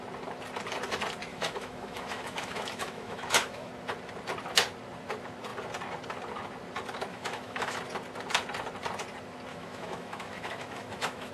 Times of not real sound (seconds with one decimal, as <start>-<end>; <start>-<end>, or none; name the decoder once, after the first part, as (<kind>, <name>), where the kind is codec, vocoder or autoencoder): 1.3-3.7 (autoencoder, DAC-VAE); 7.1-7.8; 9.5-11.3